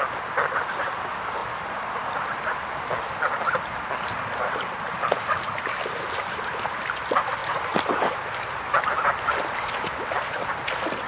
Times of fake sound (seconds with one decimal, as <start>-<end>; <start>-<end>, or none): none